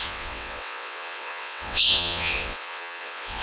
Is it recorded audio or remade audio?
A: remade